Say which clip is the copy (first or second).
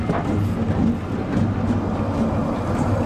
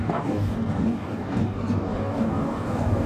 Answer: second